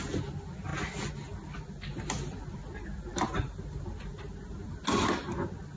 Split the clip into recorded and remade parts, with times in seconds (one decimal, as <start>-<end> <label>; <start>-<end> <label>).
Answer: 0.0-5.8 recorded